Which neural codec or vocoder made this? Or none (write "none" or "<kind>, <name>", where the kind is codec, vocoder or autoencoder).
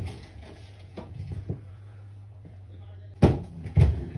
vocoder, Vocos